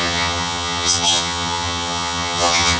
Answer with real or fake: fake